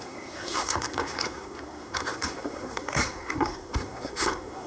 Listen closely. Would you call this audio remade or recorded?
remade